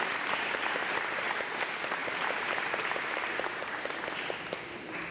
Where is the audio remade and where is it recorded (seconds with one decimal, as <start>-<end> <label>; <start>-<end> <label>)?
0.0-2.0 recorded; 2.0-3.0 remade; 3.0-5.1 recorded